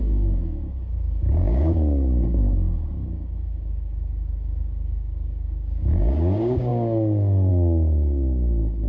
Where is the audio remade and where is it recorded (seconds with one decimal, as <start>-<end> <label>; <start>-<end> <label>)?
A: 0.0-8.9 remade